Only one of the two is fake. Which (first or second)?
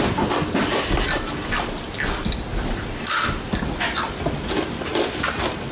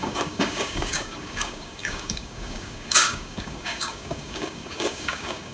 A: second